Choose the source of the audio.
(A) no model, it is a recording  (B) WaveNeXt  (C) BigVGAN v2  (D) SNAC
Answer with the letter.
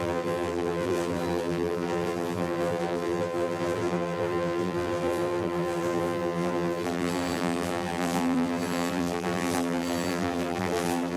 C